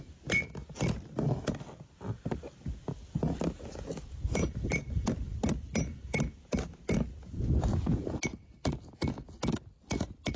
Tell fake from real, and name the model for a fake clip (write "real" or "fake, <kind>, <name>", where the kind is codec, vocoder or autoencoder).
real